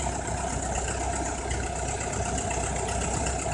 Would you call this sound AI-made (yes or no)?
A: no